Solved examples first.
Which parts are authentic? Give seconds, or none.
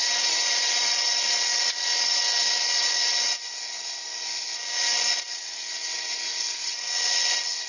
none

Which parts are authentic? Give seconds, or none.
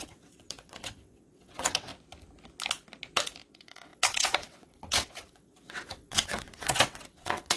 1.9-3.5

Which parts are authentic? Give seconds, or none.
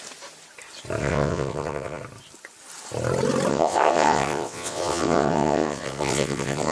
0.0-1.0; 2.0-3.5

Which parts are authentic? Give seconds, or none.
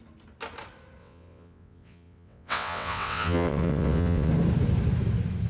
0.0-1.0; 4.3-5.5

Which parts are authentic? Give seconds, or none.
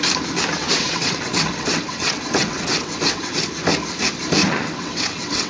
0.0-0.6; 3.5-4.4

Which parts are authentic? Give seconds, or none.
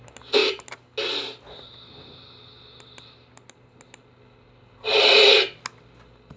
0.0-6.4